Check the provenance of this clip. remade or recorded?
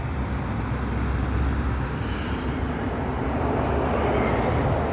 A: recorded